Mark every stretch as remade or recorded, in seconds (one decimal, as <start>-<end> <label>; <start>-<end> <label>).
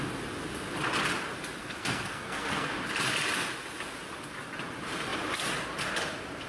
0.0-1.6 recorded; 1.6-2.7 remade; 2.7-6.5 recorded